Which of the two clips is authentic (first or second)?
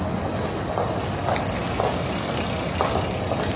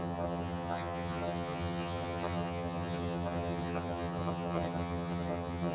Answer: first